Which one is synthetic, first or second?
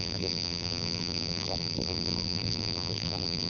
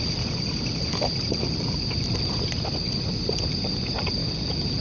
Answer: first